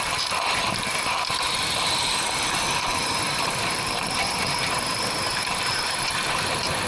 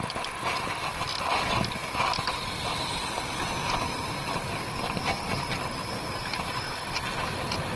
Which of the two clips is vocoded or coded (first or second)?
first